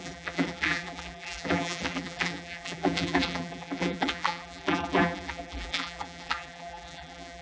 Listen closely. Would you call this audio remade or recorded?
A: remade